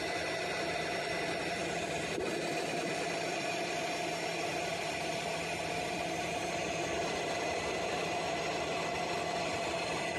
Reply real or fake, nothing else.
fake